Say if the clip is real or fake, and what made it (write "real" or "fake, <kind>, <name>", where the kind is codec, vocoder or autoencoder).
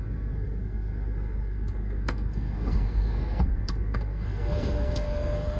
fake, codec, SNAC